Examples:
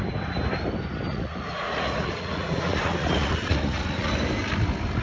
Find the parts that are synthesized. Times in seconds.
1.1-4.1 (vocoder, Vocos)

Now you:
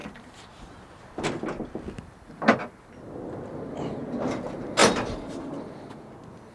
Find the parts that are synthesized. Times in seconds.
0.0-1.0 (vocoder, BigVGAN v2); 4.8-5.9

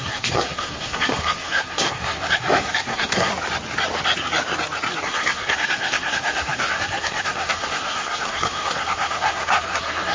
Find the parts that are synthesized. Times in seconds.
0.0-3.3 (codec, SNAC); 5.0-10.1

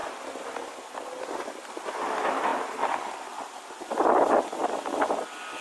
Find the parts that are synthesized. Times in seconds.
none

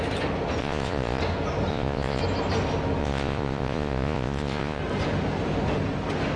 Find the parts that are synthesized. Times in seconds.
0.6-1.2 (vocoder, Vocos); 1.7-2.2; 3.0-4.8